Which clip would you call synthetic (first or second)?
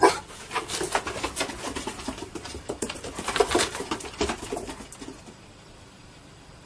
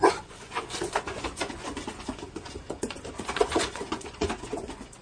second